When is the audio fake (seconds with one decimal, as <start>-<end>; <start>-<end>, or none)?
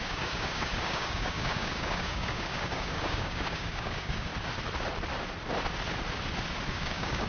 0.0-4.3; 6.7-7.3